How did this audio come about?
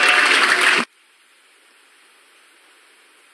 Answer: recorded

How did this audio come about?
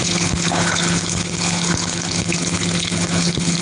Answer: remade